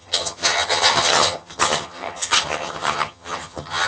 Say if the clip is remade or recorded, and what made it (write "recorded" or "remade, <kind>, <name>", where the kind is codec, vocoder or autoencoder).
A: remade, vocoder, HiFi-GAN